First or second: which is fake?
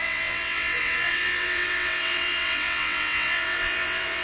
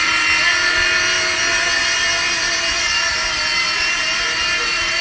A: first